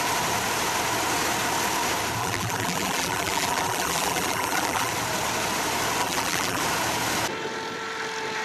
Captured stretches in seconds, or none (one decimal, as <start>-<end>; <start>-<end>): 0.0-2.2; 4.9-6.0; 6.6-8.4